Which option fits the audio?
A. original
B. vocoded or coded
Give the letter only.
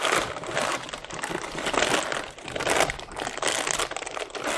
A